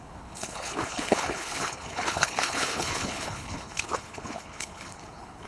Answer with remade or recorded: remade